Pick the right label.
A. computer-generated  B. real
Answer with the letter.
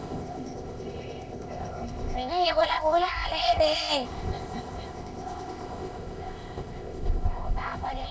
A